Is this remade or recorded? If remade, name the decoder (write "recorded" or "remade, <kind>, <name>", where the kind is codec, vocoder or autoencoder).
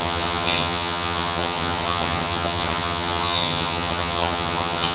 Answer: remade, vocoder, HiFi-GAN